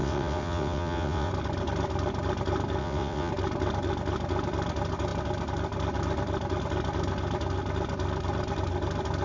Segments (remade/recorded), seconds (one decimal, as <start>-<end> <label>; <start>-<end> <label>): 0.0-1.3 remade; 1.3-2.8 recorded; 2.8-3.3 remade; 3.3-9.2 recorded